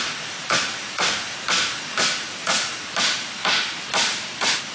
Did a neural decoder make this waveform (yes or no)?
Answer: no